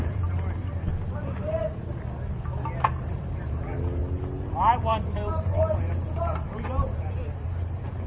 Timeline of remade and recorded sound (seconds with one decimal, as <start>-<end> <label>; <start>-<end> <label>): 0.0-0.9 remade; 0.9-3.1 recorded; 3.1-4.0 remade; 4.0-4.5 recorded; 4.5-8.1 remade